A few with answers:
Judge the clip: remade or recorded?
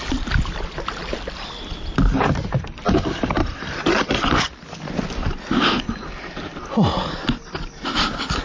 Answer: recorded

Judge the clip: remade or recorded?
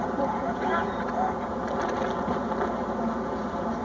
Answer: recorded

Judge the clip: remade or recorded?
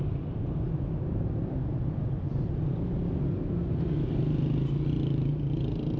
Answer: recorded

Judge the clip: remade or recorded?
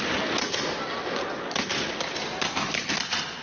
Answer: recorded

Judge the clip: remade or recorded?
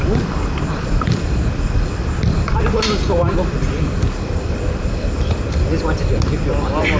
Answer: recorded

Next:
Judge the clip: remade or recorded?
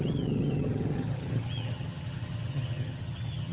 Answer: remade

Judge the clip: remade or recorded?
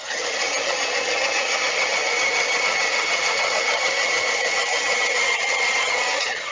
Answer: remade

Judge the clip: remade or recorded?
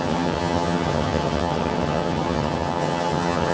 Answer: remade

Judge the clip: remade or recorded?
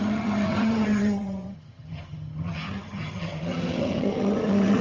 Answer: remade